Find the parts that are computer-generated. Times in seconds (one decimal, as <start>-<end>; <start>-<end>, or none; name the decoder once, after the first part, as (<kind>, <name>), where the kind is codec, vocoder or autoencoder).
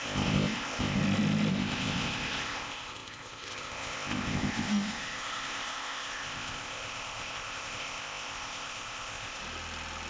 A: 0.0-1.0 (codec, ZipCodec); 1.5-9.4